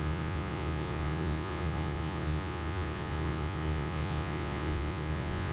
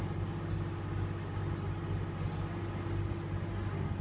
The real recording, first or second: second